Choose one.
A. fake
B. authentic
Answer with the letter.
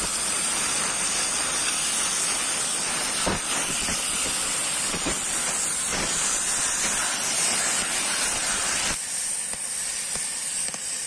B